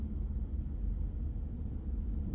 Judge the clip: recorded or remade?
recorded